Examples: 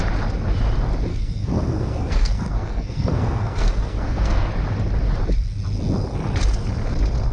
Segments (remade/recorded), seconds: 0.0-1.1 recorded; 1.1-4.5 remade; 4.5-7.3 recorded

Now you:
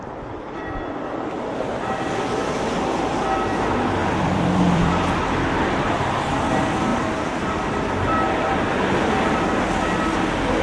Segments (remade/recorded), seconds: 0.0-4.0 recorded; 4.0-4.9 remade; 4.9-6.9 recorded; 6.9-9.6 remade; 9.6-10.6 recorded

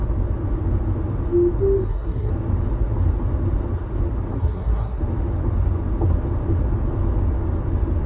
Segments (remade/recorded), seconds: 0.0-1.8 recorded; 1.8-2.3 remade; 2.3-4.3 recorded; 4.3-5.0 remade; 5.0-8.1 recorded

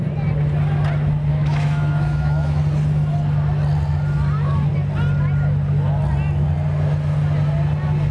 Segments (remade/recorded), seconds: 0.0-1.3 recorded; 1.3-2.6 remade; 2.6-8.1 recorded

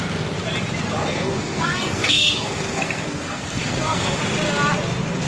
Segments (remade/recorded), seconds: 0.0-1.0 recorded; 1.0-4.2 remade; 4.2-5.3 recorded

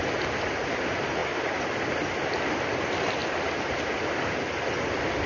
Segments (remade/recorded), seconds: 0.0-5.3 recorded

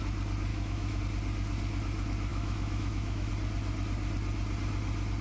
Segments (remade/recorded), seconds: 0.0-0.5 recorded; 0.5-1.0 remade; 1.0-2.3 recorded; 2.3-3.3 remade; 3.3-5.2 recorded

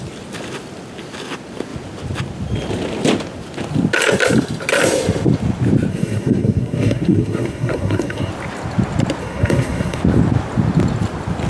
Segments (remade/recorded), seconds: 0.0-5.9 recorded; 5.9-8.3 remade; 8.3-9.2 recorded; 9.2-10.0 remade; 10.0-11.5 recorded